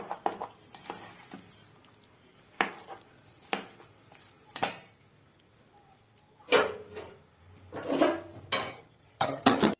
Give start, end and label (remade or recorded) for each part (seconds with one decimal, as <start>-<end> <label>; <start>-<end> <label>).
0.0-8.7 recorded; 8.7-9.8 remade